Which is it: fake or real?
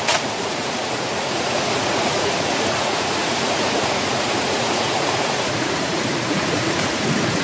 fake